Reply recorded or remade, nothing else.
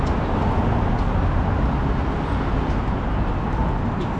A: recorded